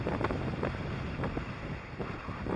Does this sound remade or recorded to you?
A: remade